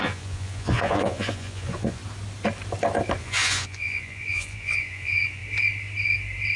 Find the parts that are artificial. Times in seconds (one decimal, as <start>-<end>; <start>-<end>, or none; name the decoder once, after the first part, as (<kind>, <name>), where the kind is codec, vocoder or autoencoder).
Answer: 0.0-2.0 (vocoder, Vocos); 3.2-5.4